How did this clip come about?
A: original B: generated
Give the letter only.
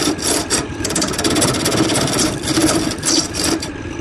B